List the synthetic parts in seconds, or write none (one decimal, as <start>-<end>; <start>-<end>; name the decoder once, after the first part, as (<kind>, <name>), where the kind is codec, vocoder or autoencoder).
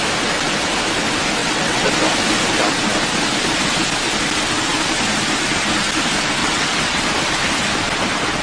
1.4-1.9 (vocoder, WaveNeXt); 6.4-7.0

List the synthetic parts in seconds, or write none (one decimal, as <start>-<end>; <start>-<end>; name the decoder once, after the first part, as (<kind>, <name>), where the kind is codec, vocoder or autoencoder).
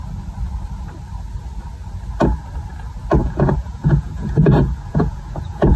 3.2-5.8 (vocoder, Vocos)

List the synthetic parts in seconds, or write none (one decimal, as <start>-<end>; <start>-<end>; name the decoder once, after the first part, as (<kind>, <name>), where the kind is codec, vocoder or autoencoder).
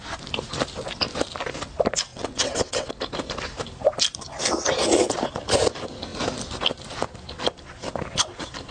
2.1-2.9 (vocoder, WaveNeXt)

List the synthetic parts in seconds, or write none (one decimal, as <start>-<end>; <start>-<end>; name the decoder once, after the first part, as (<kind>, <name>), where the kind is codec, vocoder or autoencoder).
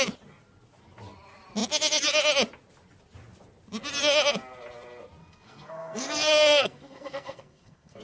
5.2-8.0 (codec, SNAC)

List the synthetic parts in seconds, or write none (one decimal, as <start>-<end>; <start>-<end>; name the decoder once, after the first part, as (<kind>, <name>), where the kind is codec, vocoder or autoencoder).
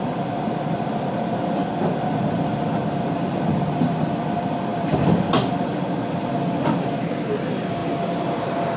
4.7-5.8 (vocoder, BigVGAN v2); 7.8-8.8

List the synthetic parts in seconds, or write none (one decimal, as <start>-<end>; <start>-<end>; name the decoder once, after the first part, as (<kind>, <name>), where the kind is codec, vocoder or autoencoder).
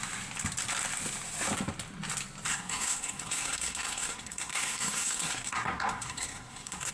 2.5-6.9 (codec, SNAC)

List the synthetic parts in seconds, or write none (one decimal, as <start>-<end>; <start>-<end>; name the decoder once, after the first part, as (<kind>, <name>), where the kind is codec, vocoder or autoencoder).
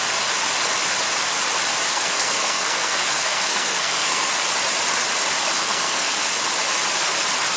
1.9-4.3 (codec, SNAC); 5.6-6.4